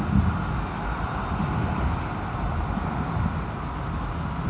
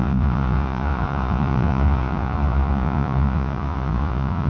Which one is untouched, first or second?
first